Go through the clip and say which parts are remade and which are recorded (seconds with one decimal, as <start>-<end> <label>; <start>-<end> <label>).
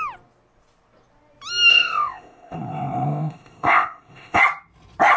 0.0-1.7 recorded; 1.7-4.4 remade; 4.4-5.2 recorded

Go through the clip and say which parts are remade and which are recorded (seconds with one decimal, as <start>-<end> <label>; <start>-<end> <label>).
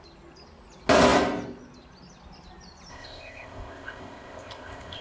0.0-2.9 recorded; 2.9-5.0 remade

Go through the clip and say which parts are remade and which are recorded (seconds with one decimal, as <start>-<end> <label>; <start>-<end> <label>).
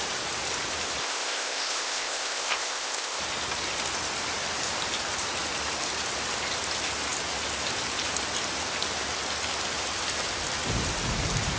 0.0-1.0 recorded; 1.0-3.2 remade; 3.2-11.6 recorded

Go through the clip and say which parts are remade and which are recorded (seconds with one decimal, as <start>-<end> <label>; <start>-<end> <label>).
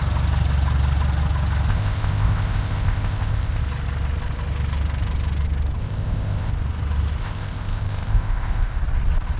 0.0-1.7 recorded; 1.7-3.6 remade; 3.6-5.8 recorded; 5.8-6.5 remade; 6.5-7.2 recorded; 7.2-8.8 remade; 8.8-9.4 recorded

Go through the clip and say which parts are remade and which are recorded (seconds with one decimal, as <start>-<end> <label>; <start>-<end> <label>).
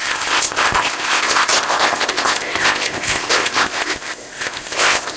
0.0-5.2 remade